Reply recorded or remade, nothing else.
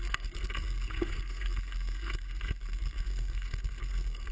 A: remade